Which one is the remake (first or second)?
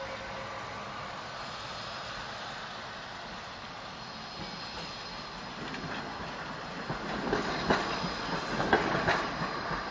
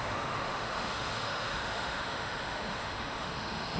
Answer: second